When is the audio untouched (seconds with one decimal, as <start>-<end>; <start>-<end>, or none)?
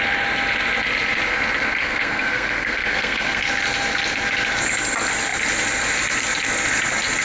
0.0-1.8; 3.4-7.2